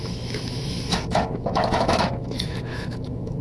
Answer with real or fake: fake